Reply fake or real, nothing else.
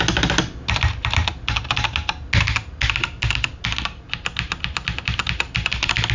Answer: real